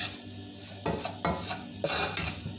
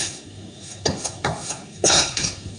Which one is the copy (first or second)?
second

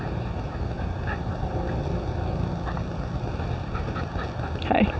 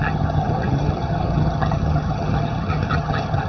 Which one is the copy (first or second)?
second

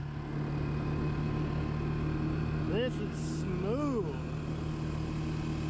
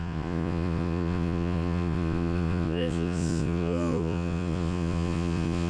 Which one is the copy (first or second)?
second